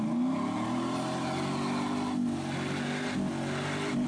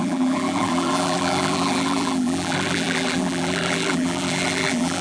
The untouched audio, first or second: first